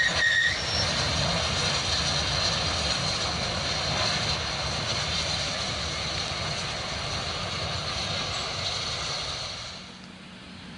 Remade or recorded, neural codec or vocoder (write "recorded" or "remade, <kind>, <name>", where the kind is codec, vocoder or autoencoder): recorded